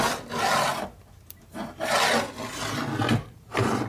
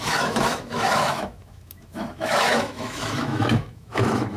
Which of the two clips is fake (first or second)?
second